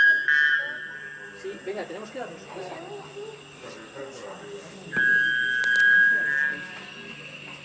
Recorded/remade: recorded